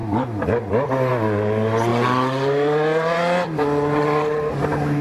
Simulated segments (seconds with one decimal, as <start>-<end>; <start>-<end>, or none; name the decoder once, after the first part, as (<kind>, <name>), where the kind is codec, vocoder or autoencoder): none